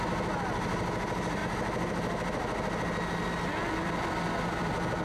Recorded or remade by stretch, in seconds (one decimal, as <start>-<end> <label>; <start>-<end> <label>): 0.0-5.0 recorded